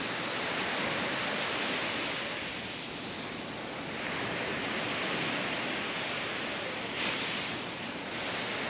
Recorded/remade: recorded